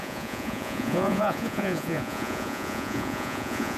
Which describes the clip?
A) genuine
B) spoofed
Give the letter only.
B